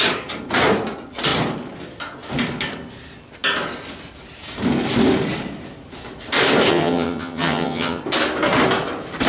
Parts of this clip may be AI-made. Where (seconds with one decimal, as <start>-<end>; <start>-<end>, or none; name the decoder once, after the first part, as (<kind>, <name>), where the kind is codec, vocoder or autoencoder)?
6.7-8.0 (vocoder, HiFi-GAN)

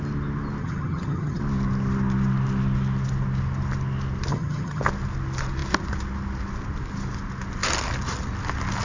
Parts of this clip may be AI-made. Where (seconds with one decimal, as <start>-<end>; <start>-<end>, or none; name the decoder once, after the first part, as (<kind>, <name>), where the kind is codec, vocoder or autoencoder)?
0.6-1.4 (vocoder, HiFi-GAN); 4.3-4.8